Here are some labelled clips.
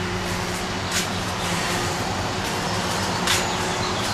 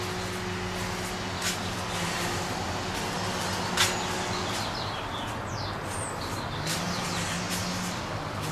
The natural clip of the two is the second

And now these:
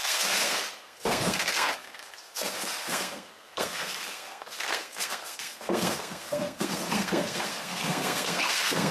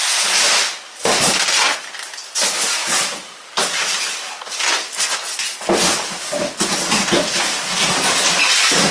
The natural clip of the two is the second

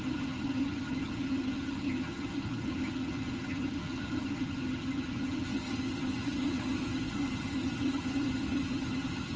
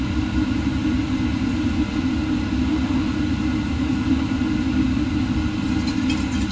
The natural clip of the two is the second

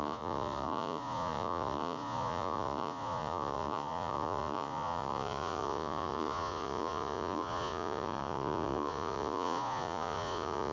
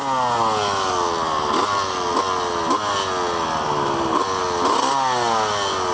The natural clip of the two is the second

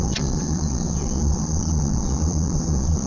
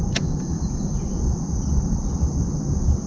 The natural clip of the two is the second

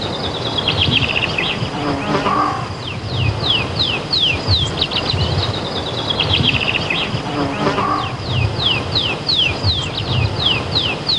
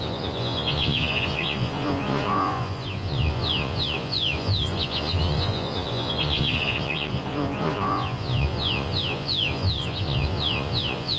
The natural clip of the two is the first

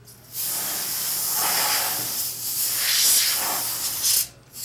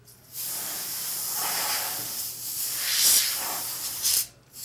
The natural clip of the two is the first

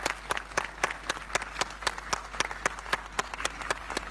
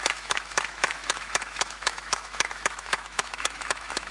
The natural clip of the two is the first